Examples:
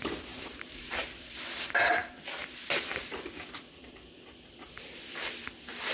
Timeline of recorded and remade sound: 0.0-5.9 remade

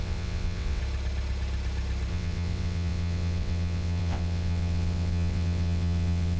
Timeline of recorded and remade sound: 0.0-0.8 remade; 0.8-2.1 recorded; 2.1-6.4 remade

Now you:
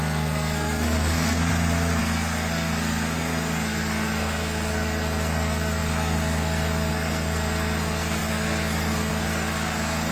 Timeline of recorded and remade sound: 0.0-1.5 remade; 1.5-2.0 recorded; 2.0-10.1 remade

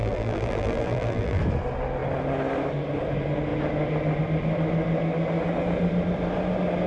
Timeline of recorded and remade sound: 0.0-1.4 remade; 1.4-6.9 recorded